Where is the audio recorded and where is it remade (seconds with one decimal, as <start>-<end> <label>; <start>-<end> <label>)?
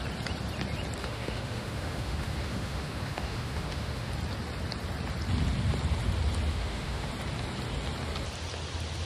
0.0-1.0 recorded; 1.0-4.1 remade; 4.1-6.5 recorded; 6.5-7.1 remade; 7.1-9.1 recorded